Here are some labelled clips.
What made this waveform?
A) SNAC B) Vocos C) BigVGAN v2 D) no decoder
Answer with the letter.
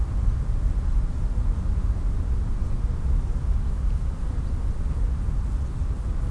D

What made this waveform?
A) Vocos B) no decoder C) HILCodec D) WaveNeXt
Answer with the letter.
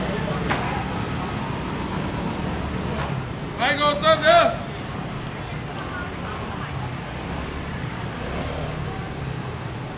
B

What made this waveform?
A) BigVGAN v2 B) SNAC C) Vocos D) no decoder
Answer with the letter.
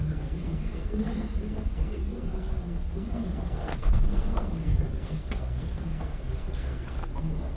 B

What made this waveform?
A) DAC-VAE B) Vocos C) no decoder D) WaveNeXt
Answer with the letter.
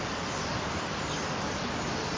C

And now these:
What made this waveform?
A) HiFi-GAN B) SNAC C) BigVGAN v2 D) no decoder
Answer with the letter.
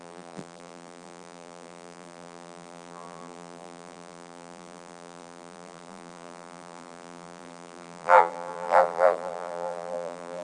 C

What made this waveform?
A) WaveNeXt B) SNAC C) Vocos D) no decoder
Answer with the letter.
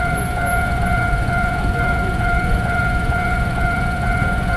C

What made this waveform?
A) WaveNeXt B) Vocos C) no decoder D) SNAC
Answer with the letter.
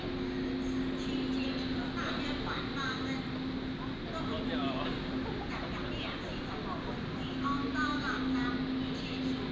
C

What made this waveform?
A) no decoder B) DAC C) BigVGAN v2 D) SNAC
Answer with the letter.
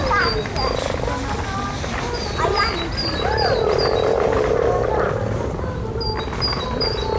A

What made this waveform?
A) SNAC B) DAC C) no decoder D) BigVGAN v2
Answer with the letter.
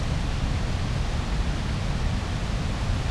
C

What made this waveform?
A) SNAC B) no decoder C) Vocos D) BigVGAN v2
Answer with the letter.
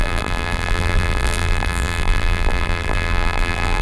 D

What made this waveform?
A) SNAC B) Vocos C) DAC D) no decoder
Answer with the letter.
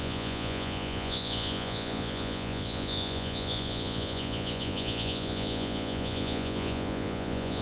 B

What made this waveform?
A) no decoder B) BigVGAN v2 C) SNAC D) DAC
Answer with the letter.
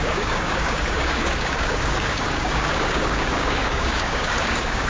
D